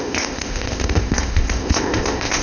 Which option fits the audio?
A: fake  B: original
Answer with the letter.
A